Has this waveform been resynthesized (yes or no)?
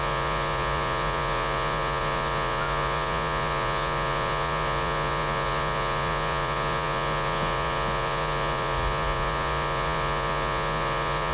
yes